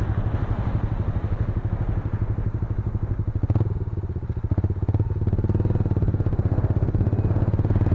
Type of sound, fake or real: real